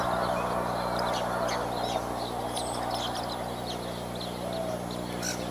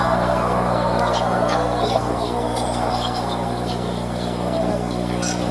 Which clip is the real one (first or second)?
first